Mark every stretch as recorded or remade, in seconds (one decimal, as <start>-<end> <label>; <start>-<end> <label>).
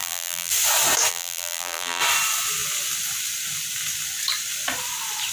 0.0-0.5 remade; 0.5-1.1 recorded; 1.1-2.0 remade; 2.0-5.3 recorded